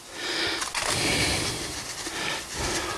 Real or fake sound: real